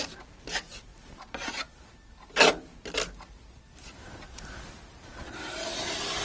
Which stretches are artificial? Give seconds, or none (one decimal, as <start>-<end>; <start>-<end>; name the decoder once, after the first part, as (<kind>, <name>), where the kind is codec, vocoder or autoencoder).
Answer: none